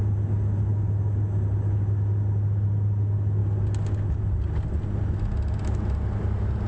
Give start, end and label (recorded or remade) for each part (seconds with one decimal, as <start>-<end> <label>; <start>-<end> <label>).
0.0-6.7 recorded